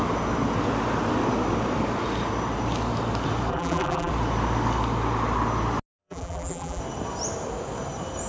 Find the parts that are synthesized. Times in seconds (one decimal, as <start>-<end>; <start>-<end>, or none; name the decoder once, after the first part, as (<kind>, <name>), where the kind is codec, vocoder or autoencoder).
3.5-4.1 (vocoder, BigVGAN v2); 6.0-6.8